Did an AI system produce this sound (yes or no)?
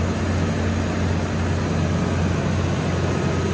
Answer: no